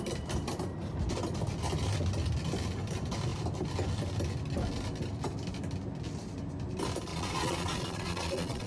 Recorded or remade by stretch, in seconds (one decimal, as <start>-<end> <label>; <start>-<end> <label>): 0.0-7.1 recorded; 7.1-8.7 remade